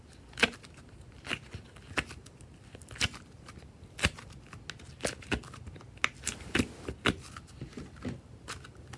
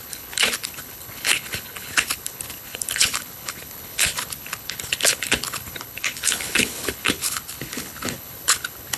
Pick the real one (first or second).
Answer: first